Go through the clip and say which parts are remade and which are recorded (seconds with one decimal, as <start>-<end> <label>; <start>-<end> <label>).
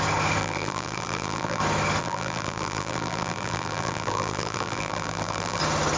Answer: 0.0-0.4 recorded; 0.4-1.6 remade; 1.6-2.0 recorded; 2.0-5.6 remade; 5.6-6.0 recorded